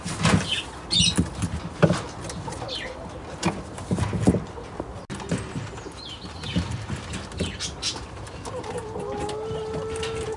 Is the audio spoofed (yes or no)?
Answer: no